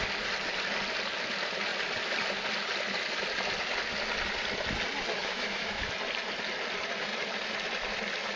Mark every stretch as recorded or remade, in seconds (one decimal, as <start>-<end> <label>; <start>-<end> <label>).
0.0-5.2 recorded; 5.2-5.9 remade; 5.9-8.4 recorded